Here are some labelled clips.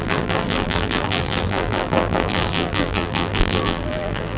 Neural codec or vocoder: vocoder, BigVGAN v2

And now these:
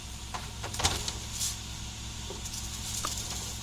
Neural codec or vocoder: none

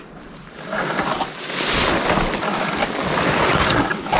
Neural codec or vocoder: vocoder, BigVGAN v2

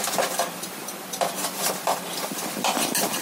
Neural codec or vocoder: none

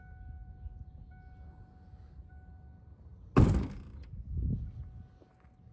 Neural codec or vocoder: none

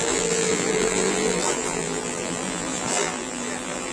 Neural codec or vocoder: vocoder, BigVGAN v2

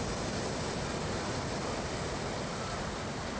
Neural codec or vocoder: none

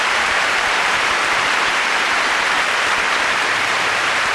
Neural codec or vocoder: vocoder, BigVGAN v2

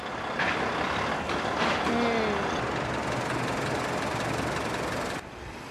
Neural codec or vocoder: none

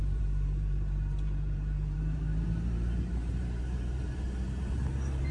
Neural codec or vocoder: vocoder, BigVGAN v2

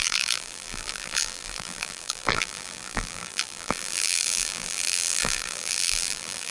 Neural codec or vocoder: vocoder, BigVGAN v2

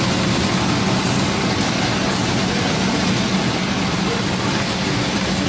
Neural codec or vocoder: none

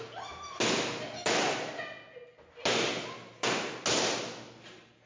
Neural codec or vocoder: none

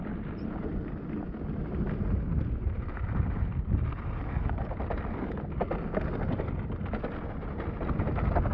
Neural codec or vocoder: none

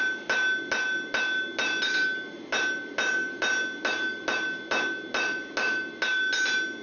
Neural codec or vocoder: none